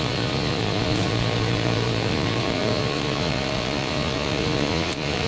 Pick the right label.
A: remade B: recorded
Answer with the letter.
A